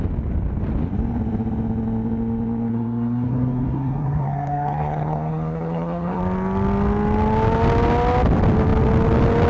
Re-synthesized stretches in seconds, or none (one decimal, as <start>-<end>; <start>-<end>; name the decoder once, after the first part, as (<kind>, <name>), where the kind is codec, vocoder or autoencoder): 2.7-6.2 (codec, SNAC)